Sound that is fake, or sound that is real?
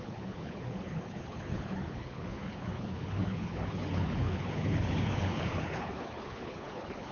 fake